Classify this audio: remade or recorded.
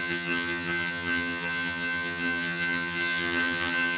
remade